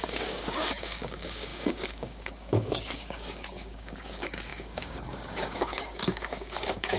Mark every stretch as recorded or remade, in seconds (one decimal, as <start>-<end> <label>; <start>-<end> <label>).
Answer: 0.0-7.0 remade